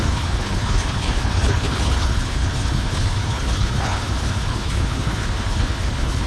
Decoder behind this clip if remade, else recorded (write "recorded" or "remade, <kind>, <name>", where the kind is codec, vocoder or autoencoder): remade, codec, HILCodec